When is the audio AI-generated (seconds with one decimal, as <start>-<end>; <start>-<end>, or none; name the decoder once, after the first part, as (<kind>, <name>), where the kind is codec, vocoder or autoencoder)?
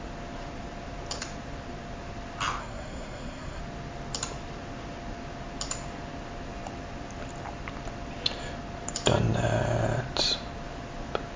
2.6-3.6 (codec, SNAC)